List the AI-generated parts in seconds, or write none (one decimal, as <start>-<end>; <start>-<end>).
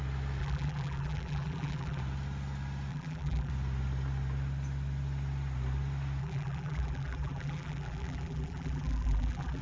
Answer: 0.4-2.0; 2.9-3.5; 6.2-9.6